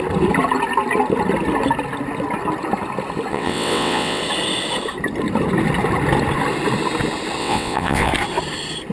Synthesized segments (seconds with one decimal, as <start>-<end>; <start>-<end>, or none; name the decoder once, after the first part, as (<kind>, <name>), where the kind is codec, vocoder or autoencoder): 3.3-4.2 (vocoder, WaveNeXt); 7.4-8.1

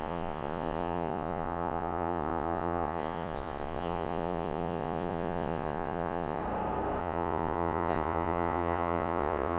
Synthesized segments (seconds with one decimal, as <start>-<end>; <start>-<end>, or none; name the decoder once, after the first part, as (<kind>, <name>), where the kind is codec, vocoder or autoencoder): 0.0-6.4 (vocoder, Vocos); 7.0-9.6